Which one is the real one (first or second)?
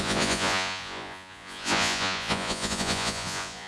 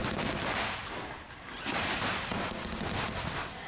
second